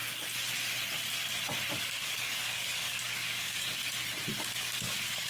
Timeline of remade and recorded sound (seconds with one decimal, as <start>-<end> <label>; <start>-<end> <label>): 0.0-1.7 recorded; 1.7-3.8 remade; 3.8-4.4 recorded; 4.4-5.3 remade